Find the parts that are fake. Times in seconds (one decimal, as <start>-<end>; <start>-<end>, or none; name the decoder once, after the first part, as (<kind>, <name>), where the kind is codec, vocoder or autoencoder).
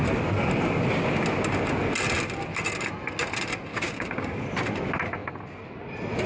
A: 3.7-4.4 (codec, DAC)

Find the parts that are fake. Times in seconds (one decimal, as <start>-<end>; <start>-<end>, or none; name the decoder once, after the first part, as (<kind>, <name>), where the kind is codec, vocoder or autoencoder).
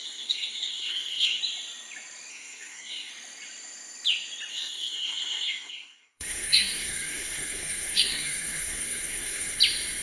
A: 0.0-1.4 (codec, SNAC); 2.3-3.1; 4.5-9.6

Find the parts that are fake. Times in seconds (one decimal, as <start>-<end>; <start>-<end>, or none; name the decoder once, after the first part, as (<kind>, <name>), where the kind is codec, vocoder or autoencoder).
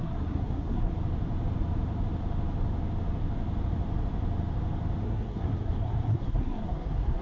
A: 0.0-0.9 (codec, SNAC); 5.0-7.2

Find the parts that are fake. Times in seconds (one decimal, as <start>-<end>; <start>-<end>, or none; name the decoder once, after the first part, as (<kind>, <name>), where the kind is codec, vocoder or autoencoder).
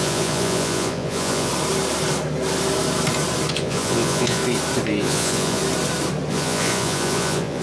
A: 0.0-1.5 (vocoder, Vocos); 3.5-4.4; 5.0-5.6; 6.3-7.6